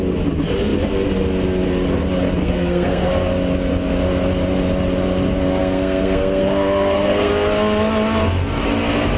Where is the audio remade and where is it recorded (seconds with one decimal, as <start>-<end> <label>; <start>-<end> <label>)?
0.0-2.4 recorded; 2.4-3.1 remade; 3.1-5.6 recorded; 5.6-7.3 remade; 7.3-9.2 recorded